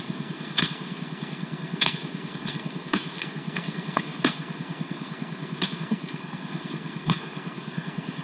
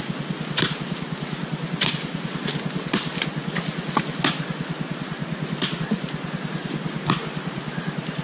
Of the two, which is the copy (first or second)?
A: first